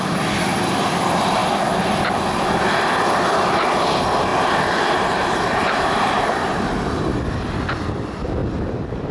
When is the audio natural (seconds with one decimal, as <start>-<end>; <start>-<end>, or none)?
0.0-4.3; 7.2-8.4